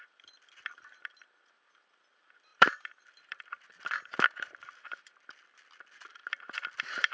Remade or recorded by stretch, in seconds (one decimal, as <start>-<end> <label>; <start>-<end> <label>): 0.0-7.1 remade